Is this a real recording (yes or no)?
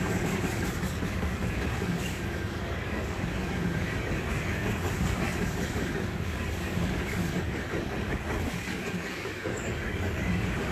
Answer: no